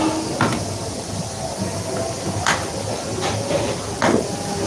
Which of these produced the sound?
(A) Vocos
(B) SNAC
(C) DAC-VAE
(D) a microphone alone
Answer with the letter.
D